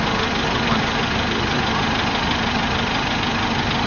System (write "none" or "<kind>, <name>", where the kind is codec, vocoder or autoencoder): none